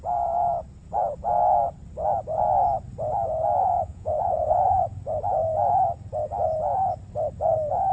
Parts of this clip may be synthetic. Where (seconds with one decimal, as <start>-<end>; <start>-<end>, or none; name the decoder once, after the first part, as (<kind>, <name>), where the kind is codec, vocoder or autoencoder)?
3.6-4.8 (vocoder, Vocos)

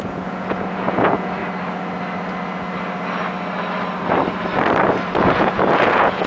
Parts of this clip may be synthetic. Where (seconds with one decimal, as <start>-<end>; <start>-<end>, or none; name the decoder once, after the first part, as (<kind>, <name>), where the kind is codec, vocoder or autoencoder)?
0.0-1.4 (vocoder, Vocos); 5.1-6.3

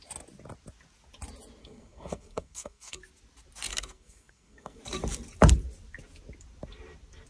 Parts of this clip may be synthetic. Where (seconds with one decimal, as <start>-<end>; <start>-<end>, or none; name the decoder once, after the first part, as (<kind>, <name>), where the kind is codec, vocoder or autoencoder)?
1.6-3.0 (codec, SNAC); 3.7-4.8

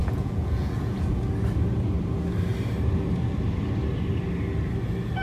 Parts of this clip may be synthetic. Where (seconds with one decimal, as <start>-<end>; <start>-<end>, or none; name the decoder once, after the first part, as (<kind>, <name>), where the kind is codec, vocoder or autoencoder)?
0.0-1.2 (vocoder, Vocos)

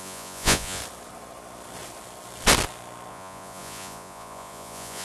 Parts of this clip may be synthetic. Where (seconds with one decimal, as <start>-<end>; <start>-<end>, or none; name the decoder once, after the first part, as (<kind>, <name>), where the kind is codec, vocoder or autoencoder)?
0.0-0.8 (vocoder, Vocos); 3.1-5.0

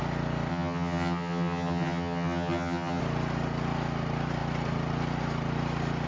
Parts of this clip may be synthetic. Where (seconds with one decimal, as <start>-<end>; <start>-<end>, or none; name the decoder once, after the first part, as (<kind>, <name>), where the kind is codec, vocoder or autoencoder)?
0.5-3.0 (vocoder, HiFi-GAN)